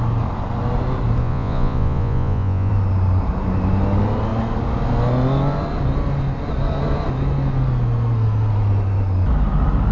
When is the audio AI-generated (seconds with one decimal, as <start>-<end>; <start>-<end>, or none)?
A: 1.2-2.7